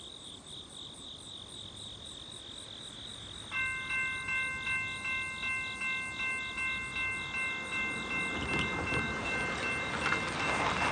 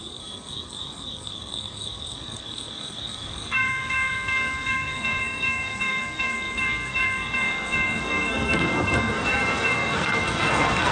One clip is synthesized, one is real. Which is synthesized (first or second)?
second